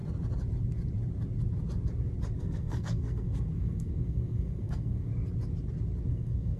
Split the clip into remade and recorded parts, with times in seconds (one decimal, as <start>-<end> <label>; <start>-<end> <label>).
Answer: 0.0-2.4 recorded; 2.4-5.1 remade; 5.1-6.1 recorded; 6.1-6.6 remade